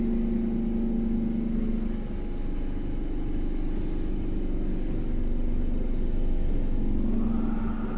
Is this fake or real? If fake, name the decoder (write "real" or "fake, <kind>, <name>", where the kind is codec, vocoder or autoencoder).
real